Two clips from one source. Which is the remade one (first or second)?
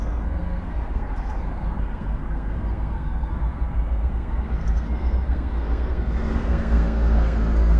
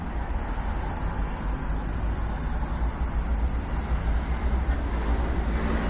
first